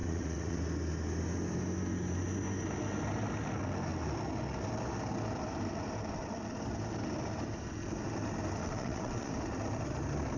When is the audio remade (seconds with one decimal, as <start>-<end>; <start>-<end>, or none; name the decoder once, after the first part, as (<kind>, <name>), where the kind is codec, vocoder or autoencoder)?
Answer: 0.0-0.6 (vocoder, WaveNeXt); 8.6-9.3